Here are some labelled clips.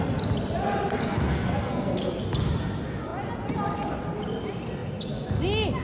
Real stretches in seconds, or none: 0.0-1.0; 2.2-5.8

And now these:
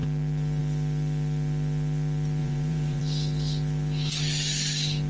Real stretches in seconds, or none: 0.0-2.4; 3.0-5.1

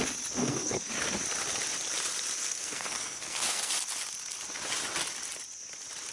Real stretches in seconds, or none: 0.0-0.4; 0.9-2.4; 3.7-6.1

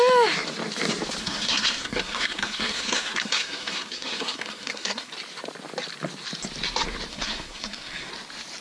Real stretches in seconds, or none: 0.0-1.2; 5.1-7.1; 8.1-8.6

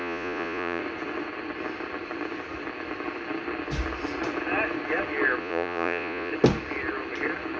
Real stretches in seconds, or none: 0.8-5.4; 6.3-7.6

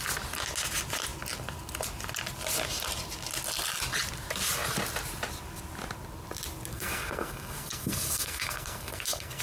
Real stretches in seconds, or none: 0.0-6.7